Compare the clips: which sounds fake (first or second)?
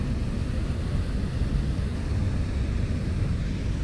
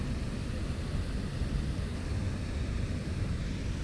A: second